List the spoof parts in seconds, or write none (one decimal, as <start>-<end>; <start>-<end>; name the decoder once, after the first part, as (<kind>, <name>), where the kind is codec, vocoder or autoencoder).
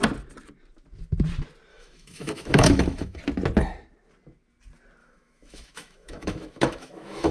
1.7-3.2 (autoencoder, DAC-VAE); 5.0-7.3